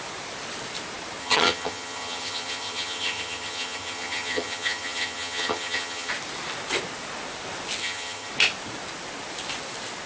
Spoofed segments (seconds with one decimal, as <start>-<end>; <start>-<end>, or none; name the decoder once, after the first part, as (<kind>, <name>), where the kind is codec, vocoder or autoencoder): 1.2-6.1 (vocoder, HiFi-GAN); 7.8-8.3